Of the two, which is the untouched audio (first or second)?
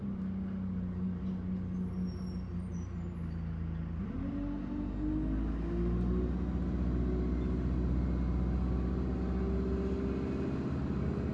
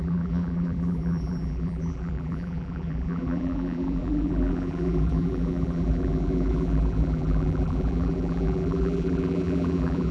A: first